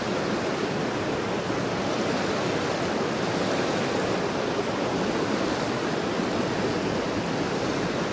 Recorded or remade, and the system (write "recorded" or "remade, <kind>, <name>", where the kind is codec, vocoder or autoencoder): recorded